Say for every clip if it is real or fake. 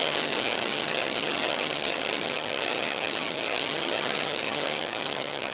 fake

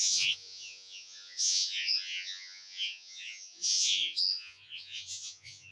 fake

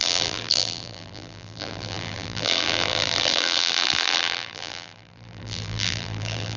fake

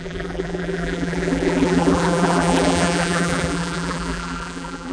fake